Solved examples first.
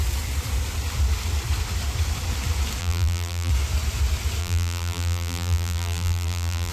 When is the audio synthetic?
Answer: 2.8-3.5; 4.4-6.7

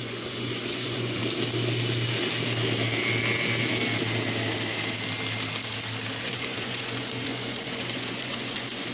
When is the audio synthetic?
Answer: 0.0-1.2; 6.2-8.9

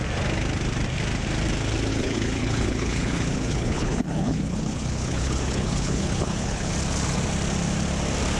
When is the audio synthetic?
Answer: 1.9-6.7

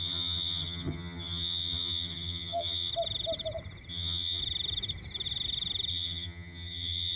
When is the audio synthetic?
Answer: 0.0-2.9; 3.9-4.4; 5.9-7.2